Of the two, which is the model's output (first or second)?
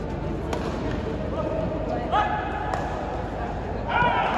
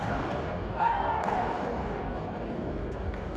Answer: second